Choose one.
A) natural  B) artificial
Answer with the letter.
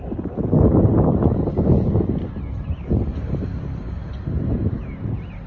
A